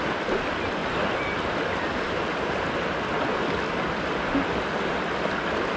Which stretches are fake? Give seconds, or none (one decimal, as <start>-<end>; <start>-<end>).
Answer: none